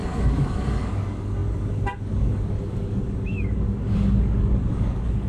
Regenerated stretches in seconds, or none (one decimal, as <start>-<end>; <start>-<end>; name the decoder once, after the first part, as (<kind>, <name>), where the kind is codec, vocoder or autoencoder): 0.0-5.3 (codec, DAC)